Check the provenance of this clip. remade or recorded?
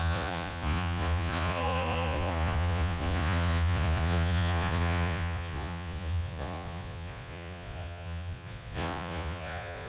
remade